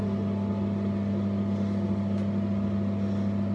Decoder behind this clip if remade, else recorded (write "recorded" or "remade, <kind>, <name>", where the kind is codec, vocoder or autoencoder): recorded